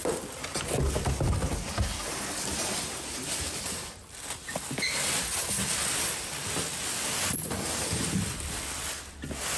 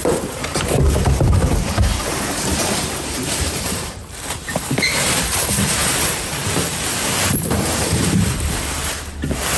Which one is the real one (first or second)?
first